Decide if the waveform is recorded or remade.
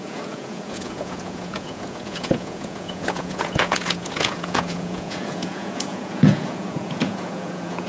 remade